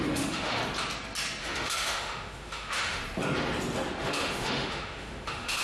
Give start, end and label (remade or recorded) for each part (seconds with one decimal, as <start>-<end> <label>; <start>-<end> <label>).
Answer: 0.0-0.6 remade; 0.6-1.4 recorded; 1.4-3.0 remade; 3.0-4.0 recorded; 4.0-5.6 remade

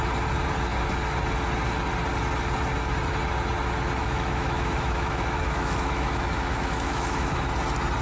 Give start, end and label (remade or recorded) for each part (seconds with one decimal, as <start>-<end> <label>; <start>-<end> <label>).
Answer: 0.0-4.0 recorded; 4.0-7.5 remade; 7.5-8.0 recorded